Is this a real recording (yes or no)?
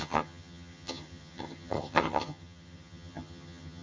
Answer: no